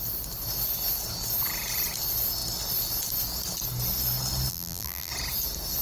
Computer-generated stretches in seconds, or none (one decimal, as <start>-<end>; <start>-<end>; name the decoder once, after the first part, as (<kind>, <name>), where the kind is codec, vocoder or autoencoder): 4.5-5.1 (vocoder, BigVGAN v2)